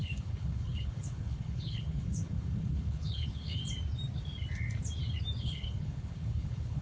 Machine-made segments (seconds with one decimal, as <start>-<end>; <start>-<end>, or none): 0.0-3.6; 5.4-6.8